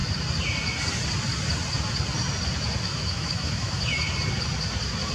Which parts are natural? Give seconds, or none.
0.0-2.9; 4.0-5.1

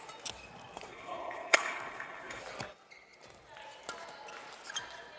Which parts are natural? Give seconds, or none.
0.0-0.9; 2.4-5.2

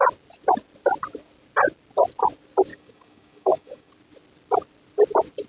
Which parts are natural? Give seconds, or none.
0.0-2.7; 3.9-5.5

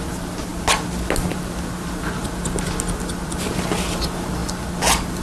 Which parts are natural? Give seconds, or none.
0.0-5.2

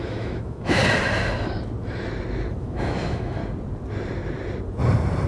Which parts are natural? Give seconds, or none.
0.8-2.6; 3.4-5.3